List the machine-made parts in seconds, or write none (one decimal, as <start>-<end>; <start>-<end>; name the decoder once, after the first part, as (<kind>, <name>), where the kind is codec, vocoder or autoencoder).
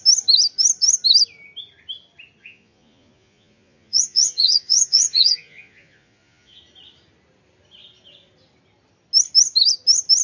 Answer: 2.4-6.6 (vocoder, Vocos)